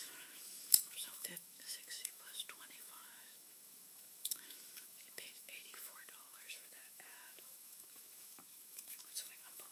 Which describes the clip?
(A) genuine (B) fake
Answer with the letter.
B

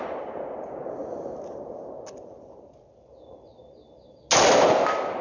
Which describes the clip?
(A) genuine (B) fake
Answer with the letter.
A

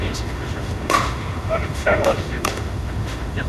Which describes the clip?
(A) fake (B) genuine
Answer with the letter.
A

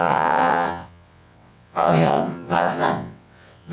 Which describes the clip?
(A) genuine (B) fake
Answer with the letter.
B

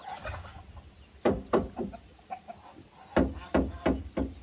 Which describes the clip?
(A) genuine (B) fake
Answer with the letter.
A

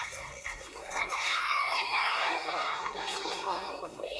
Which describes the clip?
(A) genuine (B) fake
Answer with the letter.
B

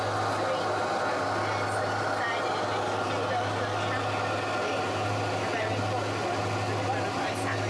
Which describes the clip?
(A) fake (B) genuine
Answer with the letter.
B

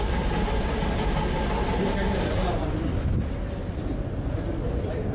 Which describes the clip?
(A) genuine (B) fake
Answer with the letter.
A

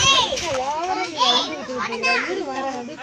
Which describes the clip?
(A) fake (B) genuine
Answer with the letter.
A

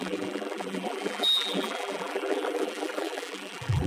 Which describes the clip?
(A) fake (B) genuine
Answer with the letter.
A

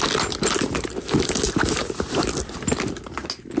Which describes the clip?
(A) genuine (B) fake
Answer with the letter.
A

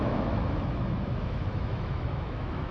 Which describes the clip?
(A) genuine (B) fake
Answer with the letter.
B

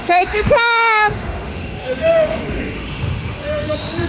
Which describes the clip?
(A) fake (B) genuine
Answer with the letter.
A